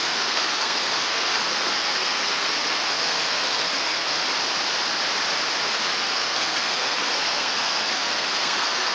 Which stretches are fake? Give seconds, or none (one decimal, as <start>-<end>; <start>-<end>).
0.0-4.2; 5.7-8.9